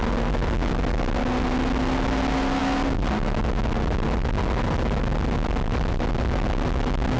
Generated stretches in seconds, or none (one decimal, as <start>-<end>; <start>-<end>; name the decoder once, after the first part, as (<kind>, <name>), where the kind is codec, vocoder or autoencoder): none